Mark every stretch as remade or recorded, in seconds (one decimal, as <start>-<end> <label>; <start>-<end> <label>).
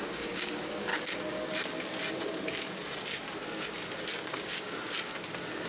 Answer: 0.0-0.9 remade; 0.9-4.3 recorded; 4.3-5.1 remade; 5.1-5.7 recorded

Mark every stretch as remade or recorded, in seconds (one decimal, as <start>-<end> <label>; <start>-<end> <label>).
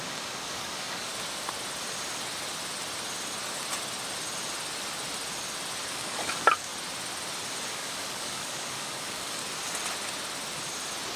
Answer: 0.0-1.1 remade; 1.1-5.9 recorded; 5.9-6.7 remade; 6.7-7.7 recorded; 7.7-9.4 remade; 9.4-11.2 recorded